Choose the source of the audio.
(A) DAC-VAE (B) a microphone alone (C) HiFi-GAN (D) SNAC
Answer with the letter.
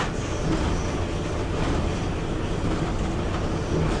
B